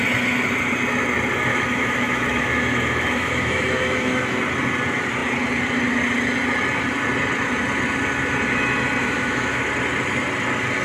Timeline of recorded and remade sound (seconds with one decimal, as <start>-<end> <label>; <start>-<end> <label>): 0.0-1.5 recorded; 1.5-4.4 remade; 4.4-9.0 recorded; 9.0-9.6 remade; 9.6-10.8 recorded